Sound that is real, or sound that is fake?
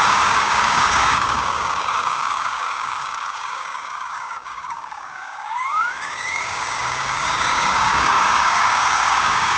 fake